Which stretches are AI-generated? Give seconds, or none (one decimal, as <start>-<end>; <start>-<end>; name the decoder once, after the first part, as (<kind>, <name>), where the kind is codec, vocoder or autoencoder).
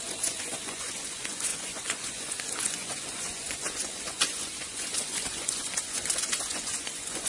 0.0-7.3 (vocoder, Vocos)